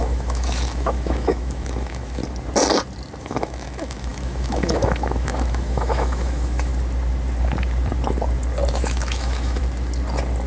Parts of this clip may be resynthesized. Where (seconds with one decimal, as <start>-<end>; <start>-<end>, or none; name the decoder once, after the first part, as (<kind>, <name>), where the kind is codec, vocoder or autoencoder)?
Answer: 0.0-2.2 (autoencoder, DAC-VAE); 3.2-6.7; 8.7-9.6